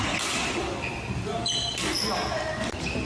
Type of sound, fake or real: real